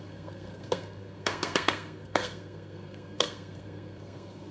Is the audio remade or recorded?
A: remade